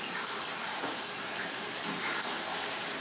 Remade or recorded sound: remade